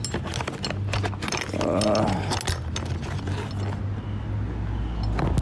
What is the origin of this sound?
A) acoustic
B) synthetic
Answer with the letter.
A